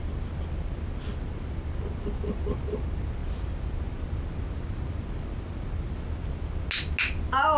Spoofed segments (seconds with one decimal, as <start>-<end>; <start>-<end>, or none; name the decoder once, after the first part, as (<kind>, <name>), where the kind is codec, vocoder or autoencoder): none